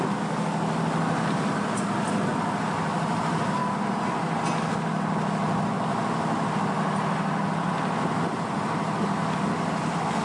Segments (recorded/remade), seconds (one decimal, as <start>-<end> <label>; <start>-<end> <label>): 0.0-10.2 recorded